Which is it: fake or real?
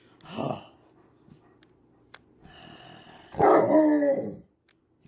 real